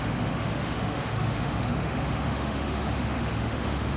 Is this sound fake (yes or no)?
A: yes